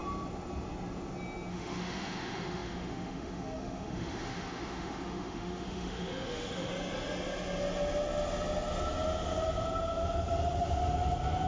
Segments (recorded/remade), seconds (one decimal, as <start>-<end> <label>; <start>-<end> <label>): 0.0-1.5 recorded; 1.5-6.7 remade; 6.7-11.5 recorded